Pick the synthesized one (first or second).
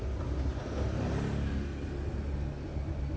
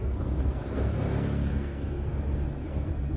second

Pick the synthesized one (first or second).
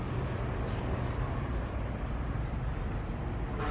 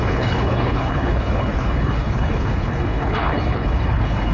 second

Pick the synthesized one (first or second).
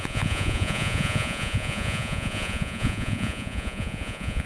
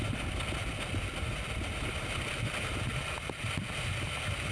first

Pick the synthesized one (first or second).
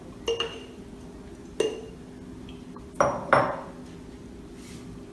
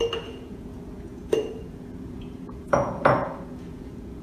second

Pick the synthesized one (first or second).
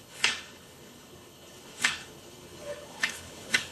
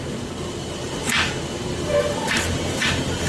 first